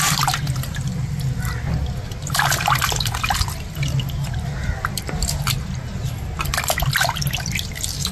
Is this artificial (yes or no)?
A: no